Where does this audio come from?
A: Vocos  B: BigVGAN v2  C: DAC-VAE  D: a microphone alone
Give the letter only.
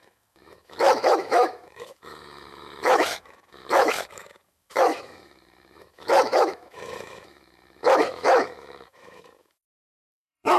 C